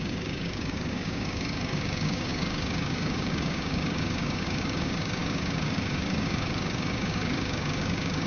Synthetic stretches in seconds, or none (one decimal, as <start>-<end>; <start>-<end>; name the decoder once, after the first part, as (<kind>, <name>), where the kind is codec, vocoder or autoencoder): 0.0-8.3 (codec, DAC)